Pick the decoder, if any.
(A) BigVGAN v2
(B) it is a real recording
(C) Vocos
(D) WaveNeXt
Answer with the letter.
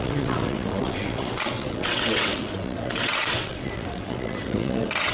D